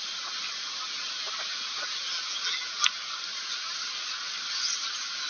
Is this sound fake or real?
real